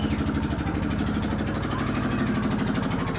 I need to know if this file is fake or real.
real